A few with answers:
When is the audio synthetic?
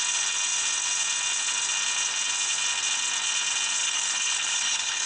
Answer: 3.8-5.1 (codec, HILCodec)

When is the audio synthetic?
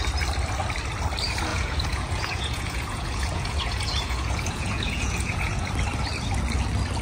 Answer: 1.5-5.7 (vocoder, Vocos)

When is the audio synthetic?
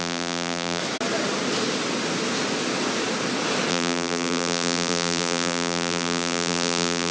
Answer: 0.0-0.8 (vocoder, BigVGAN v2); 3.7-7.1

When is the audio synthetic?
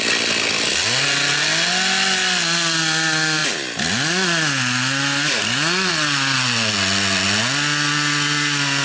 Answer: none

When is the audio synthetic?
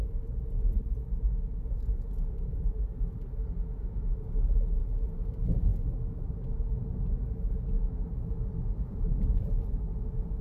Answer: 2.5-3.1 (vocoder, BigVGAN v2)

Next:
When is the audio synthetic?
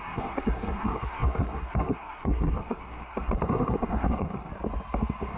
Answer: 0.0-4.5 (codec, SNAC)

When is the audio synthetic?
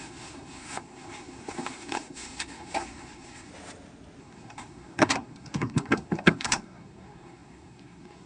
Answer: 0.0-3.5 (codec, SNAC); 4.2-8.3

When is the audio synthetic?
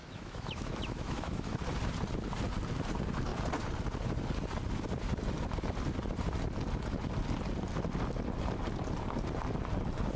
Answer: 0.0-1.6 (autoencoder, DAC-VAE)